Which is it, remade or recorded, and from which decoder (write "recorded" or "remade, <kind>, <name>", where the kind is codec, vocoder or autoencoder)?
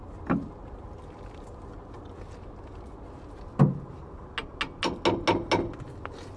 recorded